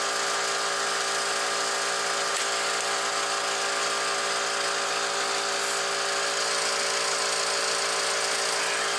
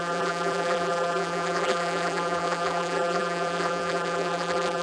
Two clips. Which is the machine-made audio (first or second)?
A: second